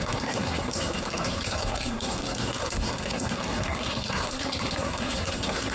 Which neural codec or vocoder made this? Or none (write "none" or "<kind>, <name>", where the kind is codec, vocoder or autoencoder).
codec, SNAC